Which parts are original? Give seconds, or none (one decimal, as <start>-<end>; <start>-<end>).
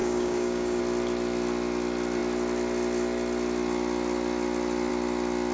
0.8-5.5